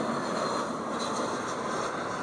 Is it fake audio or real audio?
real